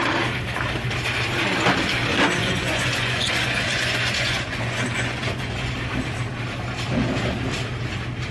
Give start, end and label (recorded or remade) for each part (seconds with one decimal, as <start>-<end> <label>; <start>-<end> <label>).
0.0-2.4 recorded; 2.4-5.7 remade; 5.7-8.3 recorded

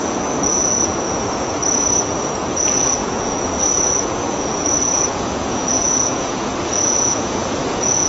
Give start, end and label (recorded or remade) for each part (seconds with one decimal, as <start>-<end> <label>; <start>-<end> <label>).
0.0-1.6 remade; 1.6-2.2 recorded; 2.2-8.1 remade

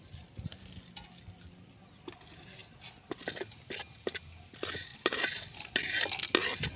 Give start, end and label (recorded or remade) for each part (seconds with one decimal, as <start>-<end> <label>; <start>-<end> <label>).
0.0-6.8 recorded

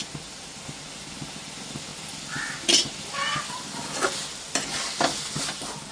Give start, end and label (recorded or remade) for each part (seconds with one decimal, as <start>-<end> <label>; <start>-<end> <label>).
0.0-5.9 recorded

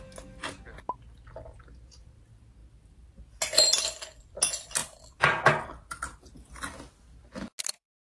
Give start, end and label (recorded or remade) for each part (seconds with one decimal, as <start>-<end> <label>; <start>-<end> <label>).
0.0-8.0 recorded

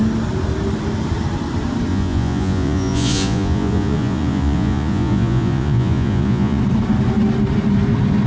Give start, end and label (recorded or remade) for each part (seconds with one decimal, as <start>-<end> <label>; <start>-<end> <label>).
0.0-1.9 recorded; 1.9-6.6 remade; 6.6-8.3 recorded

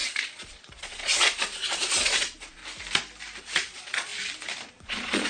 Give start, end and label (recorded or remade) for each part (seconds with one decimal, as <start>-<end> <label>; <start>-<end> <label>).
0.0-2.6 remade; 2.6-3.4 recorded; 3.4-4.1 remade; 4.1-4.7 recorded; 4.7-5.3 remade

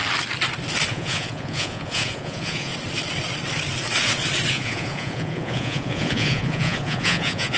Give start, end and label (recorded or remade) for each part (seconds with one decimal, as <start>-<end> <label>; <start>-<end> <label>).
0.0-0.9 recorded; 0.9-2.7 remade; 2.7-4.5 recorded; 4.5-7.6 remade